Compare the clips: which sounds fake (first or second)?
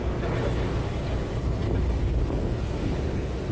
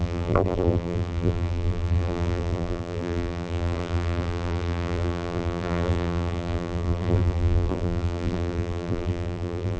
second